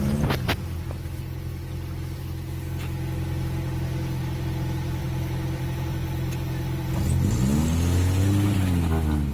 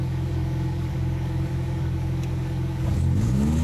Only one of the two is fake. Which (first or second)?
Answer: second